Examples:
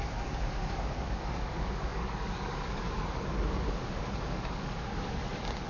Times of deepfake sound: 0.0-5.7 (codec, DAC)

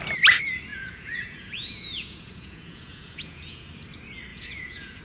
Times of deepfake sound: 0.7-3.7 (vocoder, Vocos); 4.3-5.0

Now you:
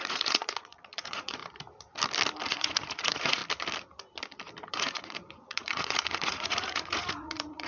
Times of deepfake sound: 0.0-1.4 (vocoder, Vocos); 2.5-3.4; 4.7-7.7

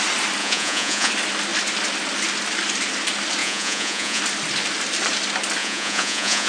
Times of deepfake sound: 0.4-1.1 (vocoder, Vocos); 3.4-4.2; 5.6-6.5